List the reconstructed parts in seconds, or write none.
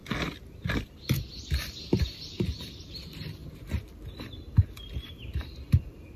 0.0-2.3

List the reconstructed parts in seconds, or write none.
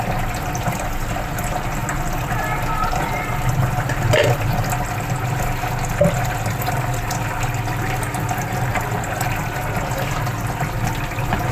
none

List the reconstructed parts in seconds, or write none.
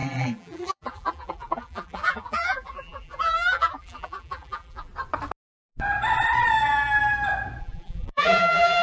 0.0-4.9; 7.6-8.8